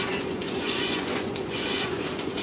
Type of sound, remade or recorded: remade